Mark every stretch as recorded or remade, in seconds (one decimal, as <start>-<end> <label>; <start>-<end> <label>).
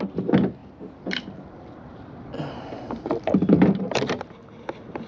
0.0-5.1 recorded